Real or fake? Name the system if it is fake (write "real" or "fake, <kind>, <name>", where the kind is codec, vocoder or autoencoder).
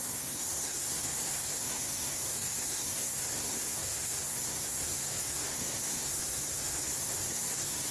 fake, codec, SNAC